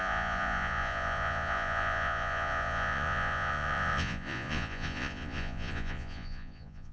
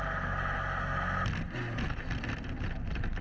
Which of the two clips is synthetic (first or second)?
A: first